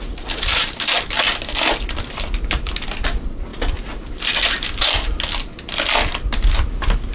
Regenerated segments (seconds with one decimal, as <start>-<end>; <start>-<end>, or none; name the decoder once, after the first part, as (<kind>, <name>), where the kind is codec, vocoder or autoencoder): none